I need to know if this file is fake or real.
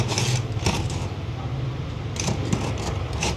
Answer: real